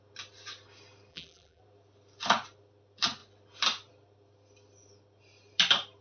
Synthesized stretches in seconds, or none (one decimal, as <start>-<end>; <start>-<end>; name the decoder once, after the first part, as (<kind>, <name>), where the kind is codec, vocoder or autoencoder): 1.1-1.6 (vocoder, BigVGAN v2)